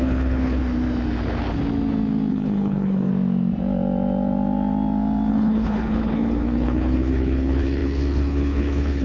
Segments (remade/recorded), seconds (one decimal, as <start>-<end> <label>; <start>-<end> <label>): 0.0-0.6 remade; 0.6-2.3 recorded; 2.3-3.1 remade; 3.1-5.3 recorded; 5.3-9.0 remade